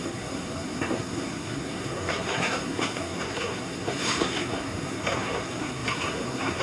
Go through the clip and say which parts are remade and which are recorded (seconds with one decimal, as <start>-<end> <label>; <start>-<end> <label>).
0.0-6.6 remade